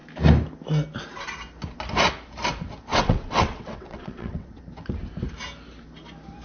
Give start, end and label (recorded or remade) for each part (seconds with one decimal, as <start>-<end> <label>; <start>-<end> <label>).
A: 0.0-2.9 recorded; 2.9-4.6 remade; 4.6-6.4 recorded